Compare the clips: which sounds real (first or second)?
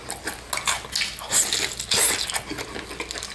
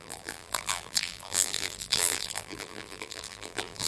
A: first